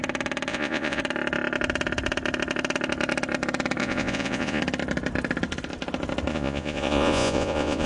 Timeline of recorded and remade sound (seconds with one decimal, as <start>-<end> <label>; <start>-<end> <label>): 0.0-0.5 recorded; 0.5-1.0 remade; 1.0-3.8 recorded; 3.8-4.6 remade; 4.6-6.3 recorded; 6.3-7.9 remade